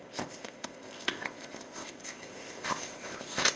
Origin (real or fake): fake